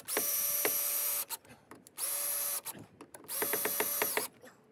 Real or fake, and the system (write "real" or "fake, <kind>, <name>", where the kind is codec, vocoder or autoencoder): real